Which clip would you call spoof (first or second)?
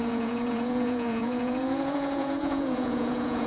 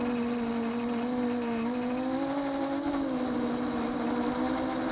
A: first